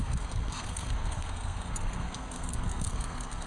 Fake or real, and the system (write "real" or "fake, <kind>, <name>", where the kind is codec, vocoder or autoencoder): fake, codec, SNAC